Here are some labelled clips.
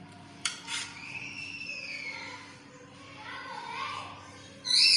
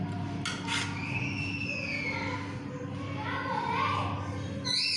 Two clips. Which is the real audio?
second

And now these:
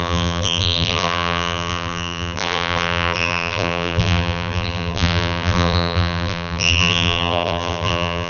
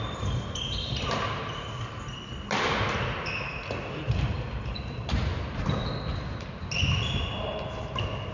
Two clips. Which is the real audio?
second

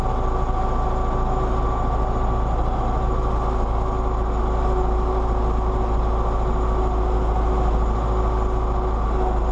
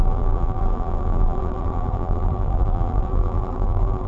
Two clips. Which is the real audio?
first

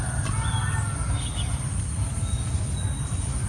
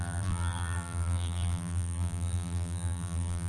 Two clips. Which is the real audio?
first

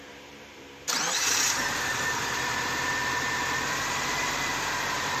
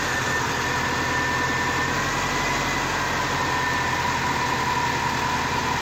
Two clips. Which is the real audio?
second